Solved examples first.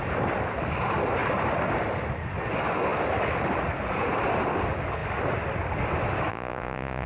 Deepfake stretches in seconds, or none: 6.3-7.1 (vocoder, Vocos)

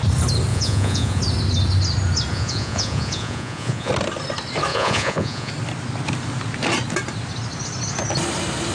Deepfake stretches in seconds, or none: 0.5-1.2 (vocoder, Vocos); 2.3-3.9; 4.7-5.5